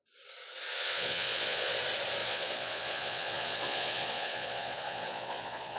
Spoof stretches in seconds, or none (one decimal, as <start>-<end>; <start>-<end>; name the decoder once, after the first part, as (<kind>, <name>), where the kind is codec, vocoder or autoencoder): 0.7-1.8 (vocoder, Vocos); 2.2-5.8